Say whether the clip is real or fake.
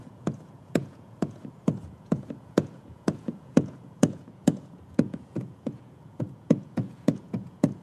fake